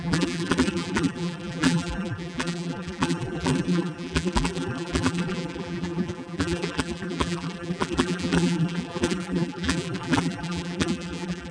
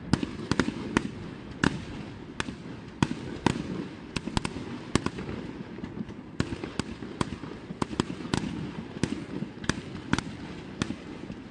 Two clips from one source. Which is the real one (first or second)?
second